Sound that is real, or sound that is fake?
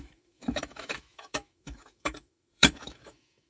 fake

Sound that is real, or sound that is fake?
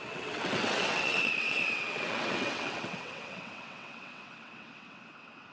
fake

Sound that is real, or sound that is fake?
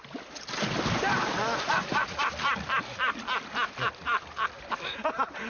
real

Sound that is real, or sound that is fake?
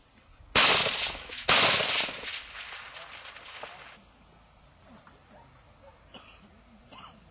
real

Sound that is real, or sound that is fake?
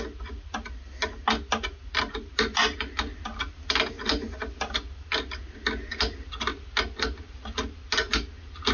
real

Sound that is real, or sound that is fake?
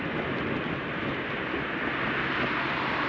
real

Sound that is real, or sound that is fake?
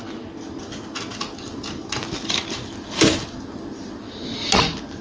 real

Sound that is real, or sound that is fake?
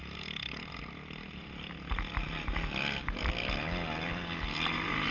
real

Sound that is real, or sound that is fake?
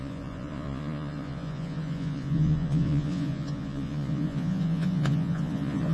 fake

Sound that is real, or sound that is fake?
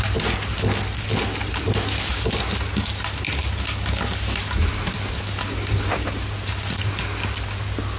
real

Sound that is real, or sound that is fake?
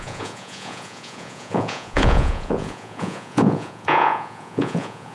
fake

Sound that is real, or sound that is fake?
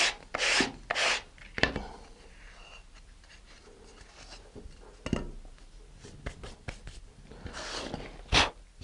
real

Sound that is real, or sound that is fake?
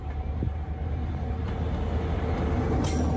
real